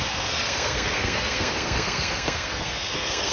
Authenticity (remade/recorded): remade